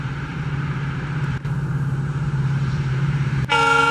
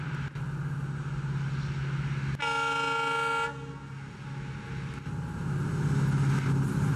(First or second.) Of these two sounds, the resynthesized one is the first